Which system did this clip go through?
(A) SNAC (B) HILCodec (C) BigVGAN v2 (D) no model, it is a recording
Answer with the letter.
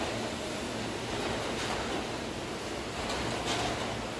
D